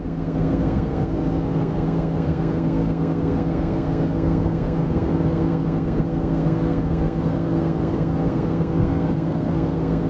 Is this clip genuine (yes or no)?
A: no